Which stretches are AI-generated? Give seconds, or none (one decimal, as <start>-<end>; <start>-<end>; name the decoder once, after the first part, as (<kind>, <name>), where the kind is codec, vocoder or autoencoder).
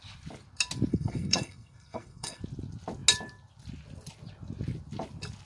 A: 0.9-2.4 (codec, SNAC)